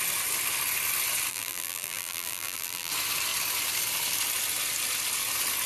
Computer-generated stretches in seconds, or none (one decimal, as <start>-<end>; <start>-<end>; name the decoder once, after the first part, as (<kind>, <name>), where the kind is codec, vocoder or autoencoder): 1.3-2.9 (vocoder, BigVGAN v2)